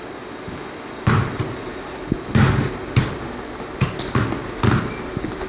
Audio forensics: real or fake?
real